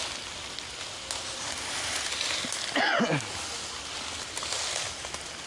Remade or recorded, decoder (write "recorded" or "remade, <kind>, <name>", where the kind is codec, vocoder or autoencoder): recorded